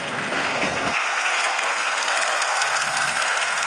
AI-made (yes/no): yes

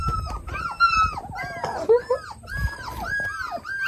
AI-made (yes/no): no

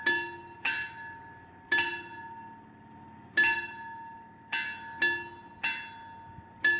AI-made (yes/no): no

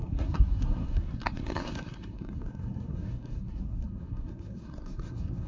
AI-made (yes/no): yes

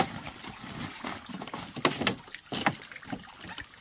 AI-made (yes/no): no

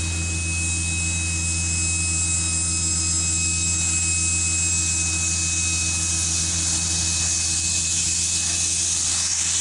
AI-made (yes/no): no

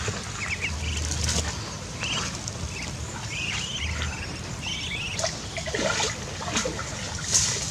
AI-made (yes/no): no